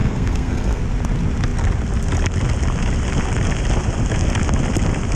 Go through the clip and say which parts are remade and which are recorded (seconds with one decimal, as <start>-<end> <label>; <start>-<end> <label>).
0.0-0.8 remade; 0.8-5.2 recorded